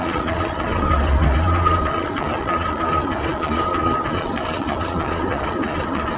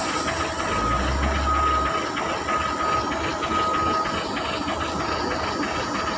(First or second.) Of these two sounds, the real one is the second